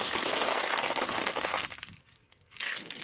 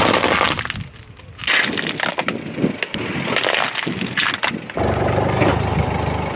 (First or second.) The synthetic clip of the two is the first